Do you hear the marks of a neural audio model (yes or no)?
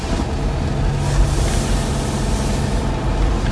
no